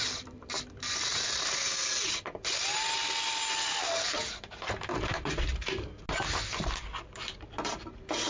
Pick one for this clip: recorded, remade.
recorded